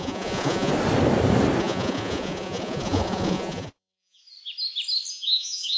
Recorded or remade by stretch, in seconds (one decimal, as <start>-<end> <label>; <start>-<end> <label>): 0.0-0.7 remade; 0.7-1.6 recorded; 1.6-4.2 remade; 4.2-5.1 recorded; 5.1-5.8 remade